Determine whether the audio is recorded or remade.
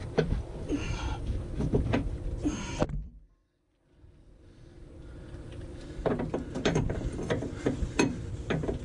remade